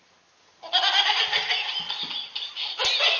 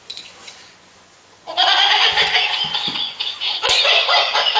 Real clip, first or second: first